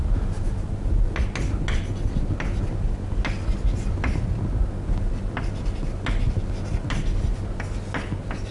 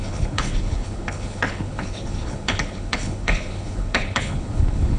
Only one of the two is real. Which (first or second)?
first